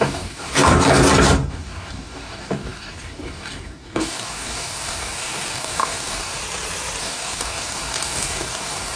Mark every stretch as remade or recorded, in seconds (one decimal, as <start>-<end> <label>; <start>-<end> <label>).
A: 0.0-0.5 remade; 0.5-1.5 recorded; 1.5-6.4 remade; 6.4-7.0 recorded; 7.0-9.0 remade

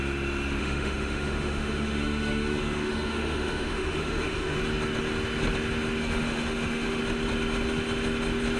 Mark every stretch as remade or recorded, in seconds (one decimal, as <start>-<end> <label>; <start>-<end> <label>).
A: 0.0-0.6 recorded; 0.6-4.6 remade; 4.6-6.0 recorded; 6.0-7.0 remade; 7.0-8.6 recorded

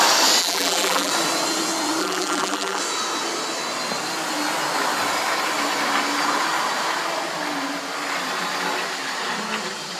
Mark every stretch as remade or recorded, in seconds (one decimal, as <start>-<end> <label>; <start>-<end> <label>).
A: 0.0-0.4 recorded; 0.4-1.1 remade; 1.1-2.0 recorded; 2.0-2.8 remade; 2.8-10.0 recorded

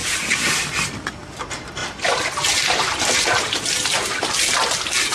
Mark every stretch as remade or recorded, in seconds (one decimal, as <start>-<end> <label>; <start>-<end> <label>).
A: 0.0-1.0 remade; 1.0-1.8 recorded; 1.8-2.9 remade; 2.9-5.1 recorded

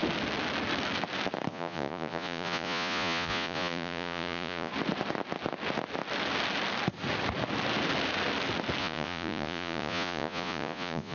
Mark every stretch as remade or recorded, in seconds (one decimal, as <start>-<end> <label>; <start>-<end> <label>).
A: 0.0-1.5 recorded; 1.5-4.7 remade; 4.7-8.8 recorded; 8.8-11.1 remade

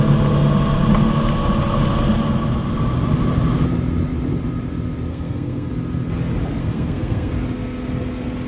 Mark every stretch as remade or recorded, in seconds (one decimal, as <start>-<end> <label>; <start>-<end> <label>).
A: 0.0-5.1 recorded; 5.1-5.7 remade; 5.7-6.6 recorded; 6.6-7.3 remade; 7.3-8.5 recorded